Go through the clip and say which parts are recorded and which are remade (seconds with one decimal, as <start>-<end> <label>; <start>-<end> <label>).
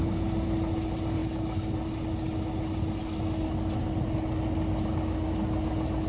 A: 0.0-6.1 recorded